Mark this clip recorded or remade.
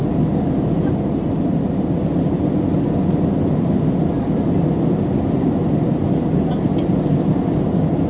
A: recorded